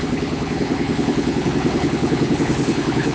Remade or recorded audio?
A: remade